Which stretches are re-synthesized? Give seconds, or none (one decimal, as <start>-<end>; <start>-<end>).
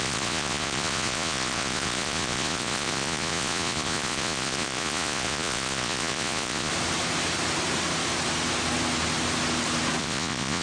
0.0-6.7; 10.0-10.6